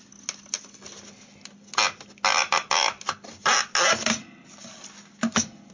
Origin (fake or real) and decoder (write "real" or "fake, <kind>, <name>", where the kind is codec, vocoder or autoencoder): real